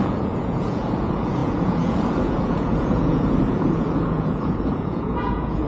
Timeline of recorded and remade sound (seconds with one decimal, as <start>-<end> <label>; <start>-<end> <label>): 0.0-5.7 remade